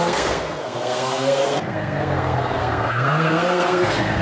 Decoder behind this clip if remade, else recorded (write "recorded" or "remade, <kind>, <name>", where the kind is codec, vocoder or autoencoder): remade, codec, SNAC